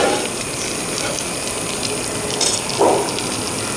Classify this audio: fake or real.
real